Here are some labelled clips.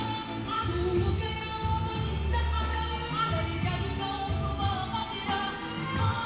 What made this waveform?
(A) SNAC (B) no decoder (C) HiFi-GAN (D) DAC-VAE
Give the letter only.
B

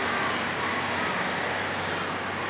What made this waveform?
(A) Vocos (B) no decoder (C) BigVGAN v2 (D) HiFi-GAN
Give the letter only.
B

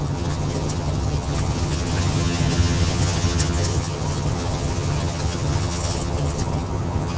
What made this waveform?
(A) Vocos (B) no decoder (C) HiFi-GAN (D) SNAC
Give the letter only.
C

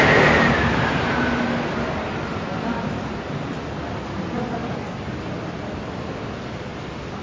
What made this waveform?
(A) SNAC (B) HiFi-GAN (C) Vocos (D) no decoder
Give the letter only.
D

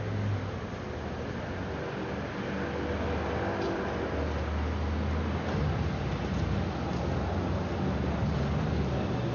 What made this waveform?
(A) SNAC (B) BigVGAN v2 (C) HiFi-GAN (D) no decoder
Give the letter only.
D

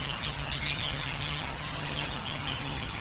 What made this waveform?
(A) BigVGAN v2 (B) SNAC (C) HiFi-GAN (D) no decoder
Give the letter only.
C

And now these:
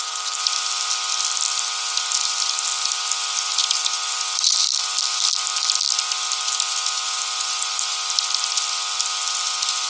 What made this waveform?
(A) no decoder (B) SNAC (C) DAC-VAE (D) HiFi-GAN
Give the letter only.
A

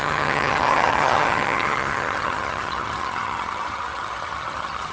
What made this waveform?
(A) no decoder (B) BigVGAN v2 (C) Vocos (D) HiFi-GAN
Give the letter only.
D